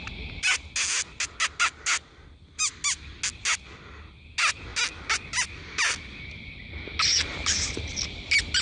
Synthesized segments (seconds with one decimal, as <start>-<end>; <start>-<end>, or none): none